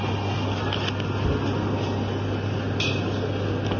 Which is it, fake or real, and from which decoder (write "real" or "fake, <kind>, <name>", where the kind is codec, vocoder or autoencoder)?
real